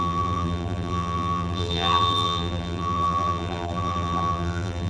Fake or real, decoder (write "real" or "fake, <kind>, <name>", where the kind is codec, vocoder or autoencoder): fake, vocoder, BigVGAN v2